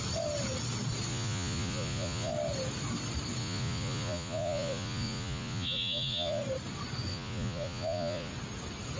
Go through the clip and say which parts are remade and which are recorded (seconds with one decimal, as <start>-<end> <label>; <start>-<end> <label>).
0.0-1.1 recorded; 1.1-2.3 remade; 2.3-3.4 recorded; 3.4-6.4 remade; 6.4-7.1 recorded; 7.1-8.3 remade; 8.3-9.0 recorded